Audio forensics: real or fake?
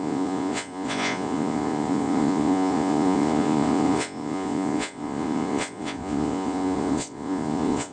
fake